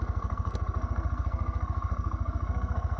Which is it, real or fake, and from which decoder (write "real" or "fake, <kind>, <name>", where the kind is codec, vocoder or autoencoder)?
fake, codec, SNAC